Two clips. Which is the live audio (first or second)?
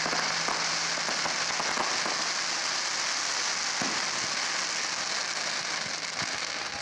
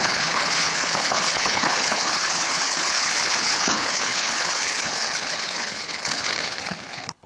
first